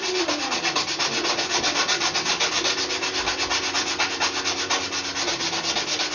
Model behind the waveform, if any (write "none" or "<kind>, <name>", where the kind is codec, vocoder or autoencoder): none